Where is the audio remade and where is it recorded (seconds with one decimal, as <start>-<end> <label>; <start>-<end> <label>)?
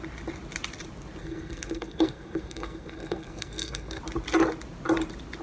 0.0-1.2 recorded; 1.2-4.0 remade; 4.0-5.4 recorded